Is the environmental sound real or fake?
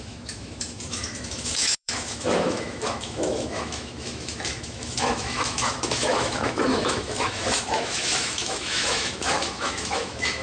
fake